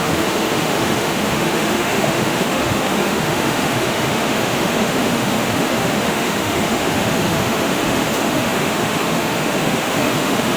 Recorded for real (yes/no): no